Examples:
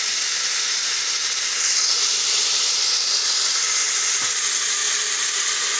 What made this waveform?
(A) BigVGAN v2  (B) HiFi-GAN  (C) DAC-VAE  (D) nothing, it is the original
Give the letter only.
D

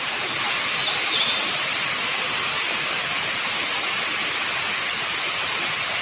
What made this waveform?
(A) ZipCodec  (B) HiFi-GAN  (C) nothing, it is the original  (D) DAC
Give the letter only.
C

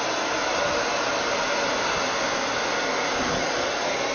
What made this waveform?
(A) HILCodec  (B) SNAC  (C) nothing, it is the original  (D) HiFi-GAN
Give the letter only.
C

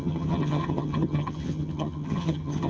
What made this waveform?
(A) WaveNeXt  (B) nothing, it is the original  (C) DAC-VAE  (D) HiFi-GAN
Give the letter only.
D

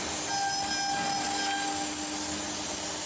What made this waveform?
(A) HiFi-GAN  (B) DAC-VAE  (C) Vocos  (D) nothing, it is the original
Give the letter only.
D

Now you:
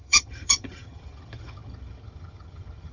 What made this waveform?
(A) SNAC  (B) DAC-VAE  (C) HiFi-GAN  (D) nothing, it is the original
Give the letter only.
C